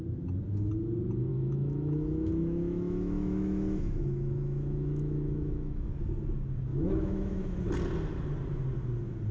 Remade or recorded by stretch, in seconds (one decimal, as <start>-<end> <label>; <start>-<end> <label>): 0.0-1.3 recorded; 1.3-5.9 remade; 5.9-6.7 recorded; 6.7-7.6 remade; 7.6-9.3 recorded